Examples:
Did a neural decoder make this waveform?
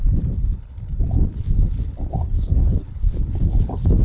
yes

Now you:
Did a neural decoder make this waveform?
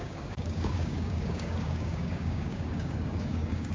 yes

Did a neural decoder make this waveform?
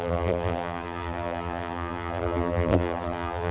yes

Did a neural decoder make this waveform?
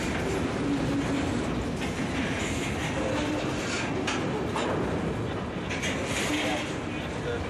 no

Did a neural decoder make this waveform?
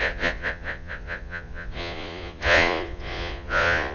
yes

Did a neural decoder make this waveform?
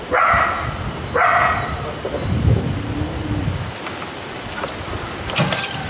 no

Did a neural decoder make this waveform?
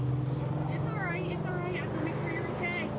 no